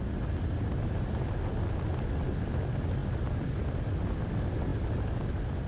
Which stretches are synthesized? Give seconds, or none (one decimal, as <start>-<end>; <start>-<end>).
none